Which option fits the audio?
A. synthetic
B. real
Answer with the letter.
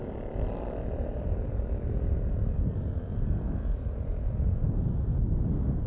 B